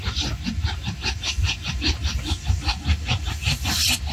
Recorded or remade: recorded